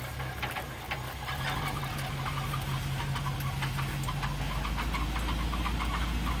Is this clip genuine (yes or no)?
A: yes